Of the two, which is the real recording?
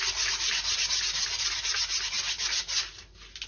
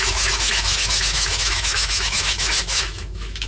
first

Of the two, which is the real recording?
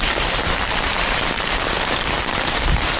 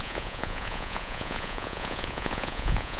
first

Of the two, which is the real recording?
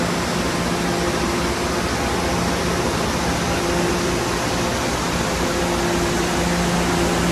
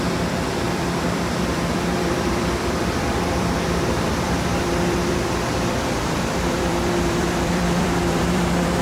first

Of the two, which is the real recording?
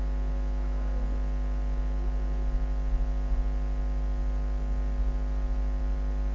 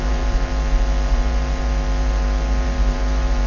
first